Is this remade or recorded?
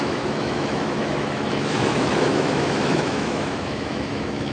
remade